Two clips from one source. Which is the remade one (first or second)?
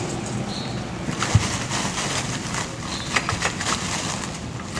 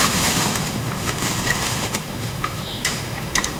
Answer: second